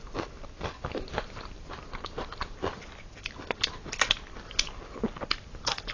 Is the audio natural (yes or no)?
yes